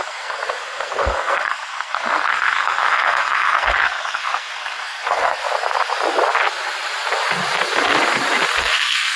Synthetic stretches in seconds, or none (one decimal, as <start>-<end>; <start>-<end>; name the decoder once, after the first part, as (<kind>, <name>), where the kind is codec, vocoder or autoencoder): 0.0-5.4 (codec, SNAC); 8.6-9.2